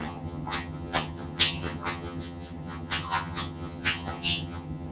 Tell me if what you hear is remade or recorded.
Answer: remade